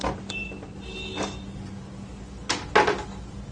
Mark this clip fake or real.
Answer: real